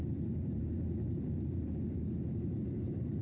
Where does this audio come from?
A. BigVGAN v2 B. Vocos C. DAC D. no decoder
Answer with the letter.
A